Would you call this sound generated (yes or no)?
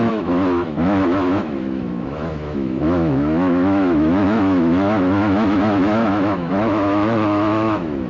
yes